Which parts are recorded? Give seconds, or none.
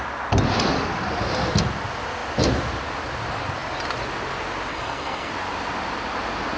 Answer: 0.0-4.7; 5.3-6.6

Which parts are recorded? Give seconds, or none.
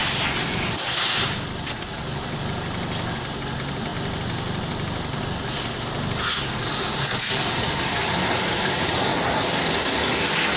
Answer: 0.0-10.6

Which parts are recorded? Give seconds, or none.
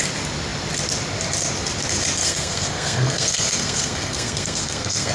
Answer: 0.0-2.2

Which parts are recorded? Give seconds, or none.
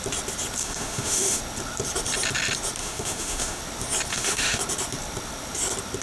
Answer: 0.0-0.6; 1.4-2.8; 3.6-4.1; 4.6-6.0